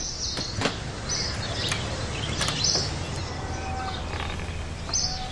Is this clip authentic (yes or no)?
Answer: yes